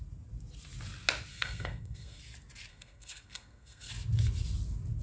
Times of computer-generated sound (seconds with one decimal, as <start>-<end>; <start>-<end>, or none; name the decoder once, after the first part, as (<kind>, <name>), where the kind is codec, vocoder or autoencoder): 1.3-2.2 (codec, SNAC); 2.7-3.9